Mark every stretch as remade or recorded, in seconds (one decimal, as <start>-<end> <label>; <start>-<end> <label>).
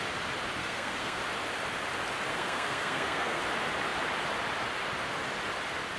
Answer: 0.0-0.6 recorded; 0.6-1.2 remade; 1.2-2.3 recorded; 2.3-3.4 remade; 3.4-6.0 recorded